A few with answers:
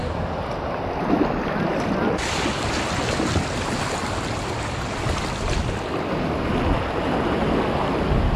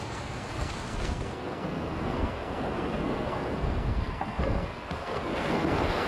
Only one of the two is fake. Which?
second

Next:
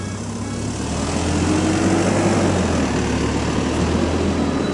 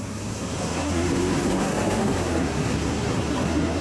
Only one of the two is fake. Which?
second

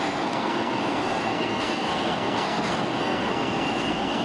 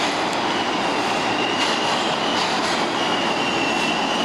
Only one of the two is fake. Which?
first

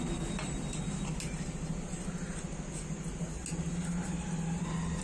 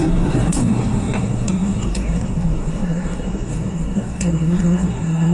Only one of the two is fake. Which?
second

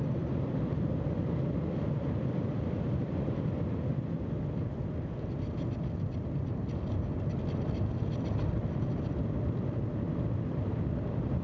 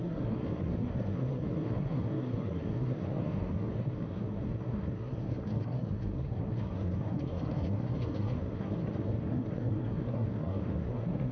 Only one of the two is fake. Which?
second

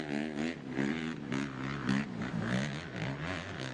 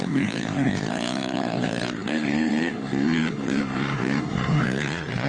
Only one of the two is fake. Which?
second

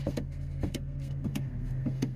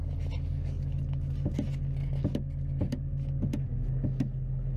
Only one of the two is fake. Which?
first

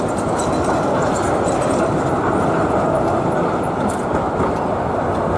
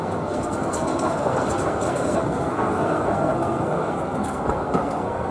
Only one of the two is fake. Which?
second